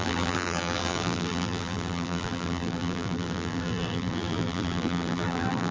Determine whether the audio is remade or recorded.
remade